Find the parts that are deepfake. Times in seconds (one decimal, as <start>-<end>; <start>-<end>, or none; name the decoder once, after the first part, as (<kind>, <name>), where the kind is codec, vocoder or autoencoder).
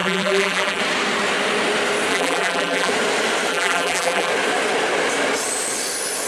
0.0-0.8 (vocoder, BigVGAN v2); 2.1-2.9; 3.5-4.3